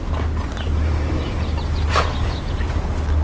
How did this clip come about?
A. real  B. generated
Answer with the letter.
A